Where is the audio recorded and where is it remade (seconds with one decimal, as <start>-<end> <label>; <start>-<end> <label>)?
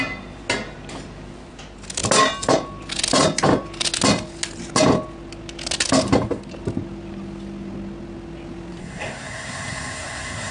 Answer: 0.0-8.8 recorded; 8.8-10.5 remade